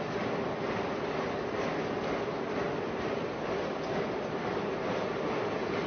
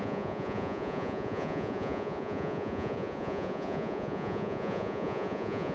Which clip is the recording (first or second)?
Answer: first